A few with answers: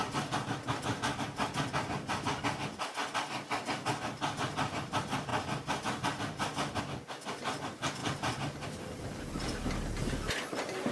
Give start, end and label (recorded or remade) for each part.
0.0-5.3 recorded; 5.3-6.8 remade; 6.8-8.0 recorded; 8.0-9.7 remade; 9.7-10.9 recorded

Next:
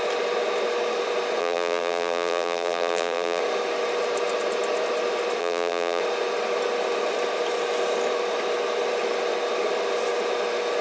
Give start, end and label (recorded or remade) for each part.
0.0-1.4 recorded; 1.4-3.4 remade; 3.4-5.4 recorded; 5.4-6.0 remade; 6.0-10.8 recorded

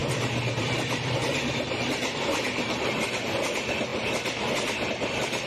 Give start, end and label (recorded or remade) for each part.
0.0-0.5 recorded; 0.5-5.5 remade

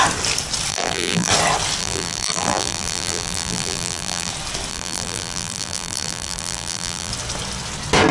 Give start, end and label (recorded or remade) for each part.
0.0-0.7 recorded; 0.7-1.3 remade; 1.3-1.8 recorded; 1.8-4.3 remade; 4.3-4.7 recorded; 4.7-7.1 remade; 7.1-8.1 recorded